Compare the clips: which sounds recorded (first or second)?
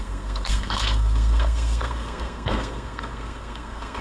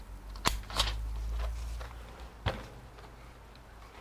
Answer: second